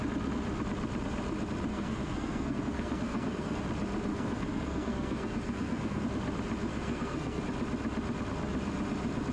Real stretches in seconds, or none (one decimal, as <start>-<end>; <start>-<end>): 0.0-1.7; 3.6-4.1; 6.0-6.7; 7.4-9.3